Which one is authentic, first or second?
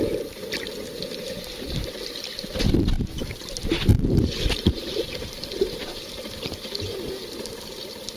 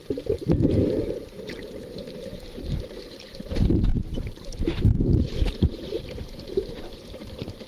first